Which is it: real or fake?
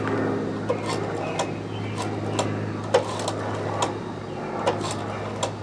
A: real